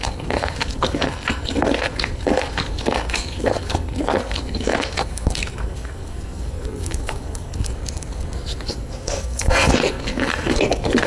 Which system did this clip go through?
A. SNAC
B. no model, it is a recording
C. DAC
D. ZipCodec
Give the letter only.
A